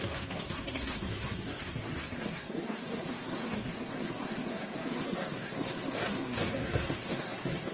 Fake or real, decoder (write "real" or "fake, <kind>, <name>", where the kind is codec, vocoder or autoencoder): fake, codec, SNAC